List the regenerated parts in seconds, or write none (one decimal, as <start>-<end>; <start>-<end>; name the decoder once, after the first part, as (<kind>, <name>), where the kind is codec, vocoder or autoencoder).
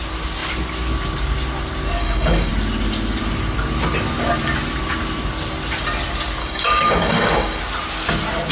2.0-2.5 (codec, DAC); 6.4-7.6